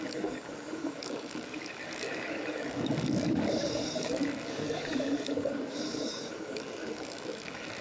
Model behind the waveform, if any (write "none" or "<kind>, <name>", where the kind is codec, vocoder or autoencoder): codec, DAC